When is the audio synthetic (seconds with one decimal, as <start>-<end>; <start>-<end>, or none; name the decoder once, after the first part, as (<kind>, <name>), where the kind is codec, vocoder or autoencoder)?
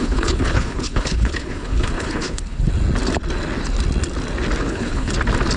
0.0-2.7 (codec, HILCodec); 4.6-5.1